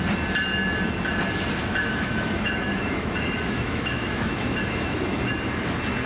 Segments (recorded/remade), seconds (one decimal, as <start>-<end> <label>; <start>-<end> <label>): 0.0-1.6 recorded; 1.6-5.3 remade; 5.3-6.1 recorded